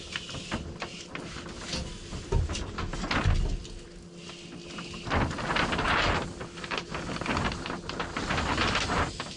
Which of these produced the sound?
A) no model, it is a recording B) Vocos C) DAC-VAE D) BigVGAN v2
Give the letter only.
A